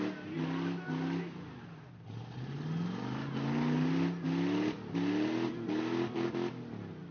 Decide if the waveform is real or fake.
real